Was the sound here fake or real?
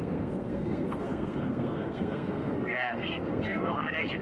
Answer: fake